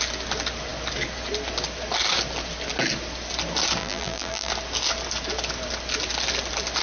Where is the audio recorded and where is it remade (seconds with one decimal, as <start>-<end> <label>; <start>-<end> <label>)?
0.0-3.8 recorded; 3.8-4.5 remade; 4.5-6.8 recorded